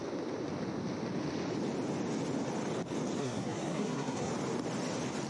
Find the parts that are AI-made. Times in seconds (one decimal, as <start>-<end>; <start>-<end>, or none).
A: 3.2-4.3